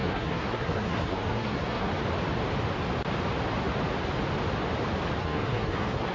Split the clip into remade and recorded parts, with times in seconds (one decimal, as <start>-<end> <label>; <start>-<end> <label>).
0.0-1.9 remade; 1.9-5.2 recorded; 5.2-6.1 remade